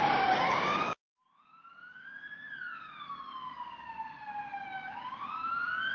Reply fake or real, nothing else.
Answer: fake